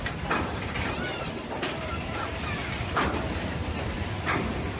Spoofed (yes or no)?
yes